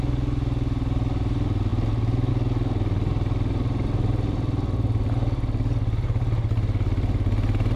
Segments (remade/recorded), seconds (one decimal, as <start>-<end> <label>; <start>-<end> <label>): 0.0-7.8 recorded